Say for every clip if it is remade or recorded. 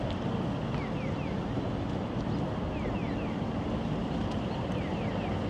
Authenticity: recorded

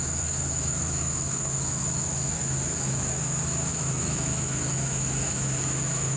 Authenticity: remade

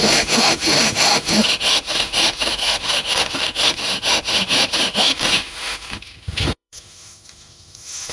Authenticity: remade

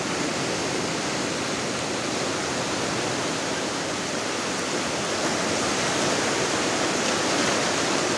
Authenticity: recorded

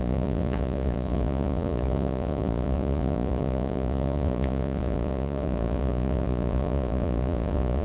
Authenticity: remade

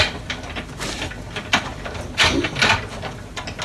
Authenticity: recorded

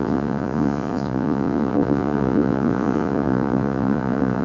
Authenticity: remade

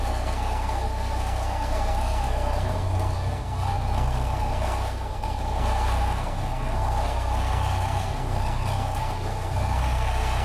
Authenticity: remade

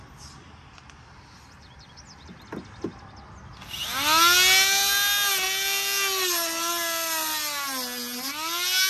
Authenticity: recorded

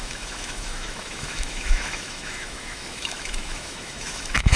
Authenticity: remade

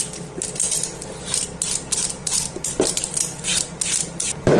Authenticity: recorded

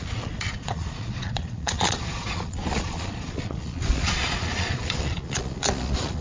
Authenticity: remade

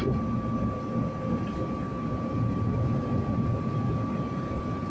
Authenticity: recorded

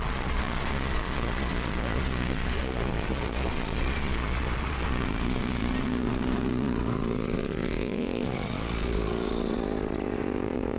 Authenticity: remade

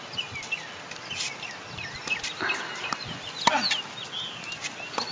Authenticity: recorded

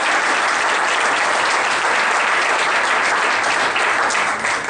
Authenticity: recorded